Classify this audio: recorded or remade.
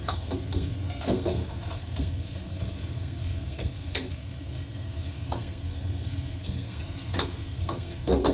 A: remade